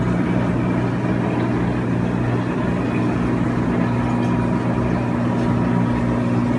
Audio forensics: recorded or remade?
recorded